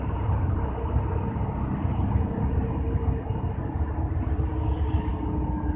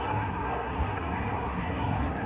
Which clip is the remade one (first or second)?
second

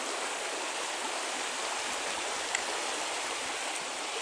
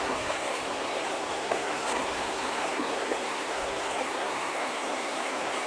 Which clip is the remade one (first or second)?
second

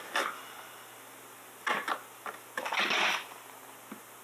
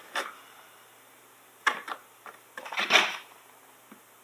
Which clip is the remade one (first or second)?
second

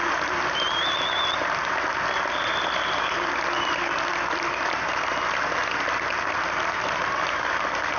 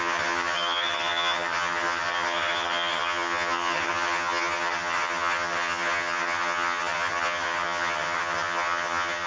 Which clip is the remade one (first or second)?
second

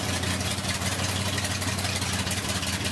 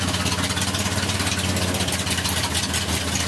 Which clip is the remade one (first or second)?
first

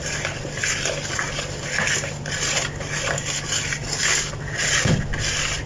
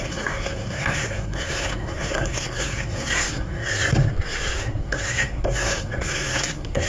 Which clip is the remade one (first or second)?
second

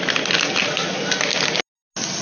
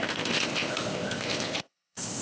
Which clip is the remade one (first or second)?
second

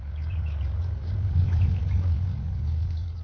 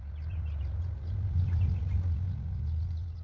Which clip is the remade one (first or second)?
first